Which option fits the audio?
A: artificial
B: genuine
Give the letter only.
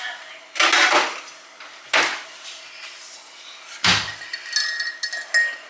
B